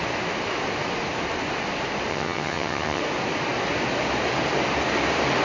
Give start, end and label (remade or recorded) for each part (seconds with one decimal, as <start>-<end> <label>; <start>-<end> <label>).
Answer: 0.0-2.1 recorded; 2.1-3.0 remade; 3.0-5.4 recorded